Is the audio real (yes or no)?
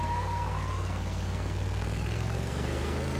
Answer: no